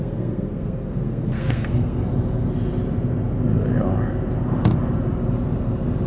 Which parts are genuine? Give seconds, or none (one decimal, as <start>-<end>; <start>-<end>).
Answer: 2.1-6.1